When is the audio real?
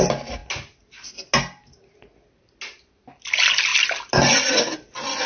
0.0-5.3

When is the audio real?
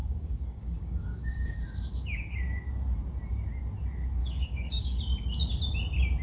1.5-4.2; 5.0-6.2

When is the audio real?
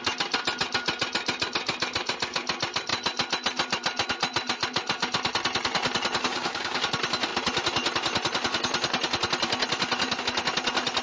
0.0-6.3; 6.8-11.0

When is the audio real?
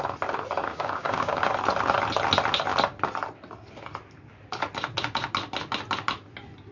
0.0-0.6; 1.5-6.7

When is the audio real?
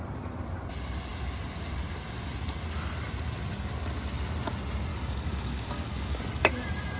0.0-4.9; 6.2-7.0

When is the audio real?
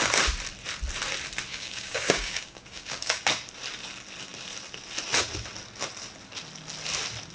0.0-1.5; 3.2-7.3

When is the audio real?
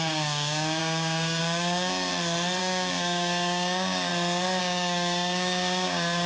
2.1-2.6; 4.1-4.6